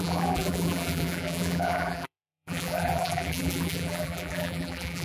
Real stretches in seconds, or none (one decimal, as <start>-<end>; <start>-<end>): none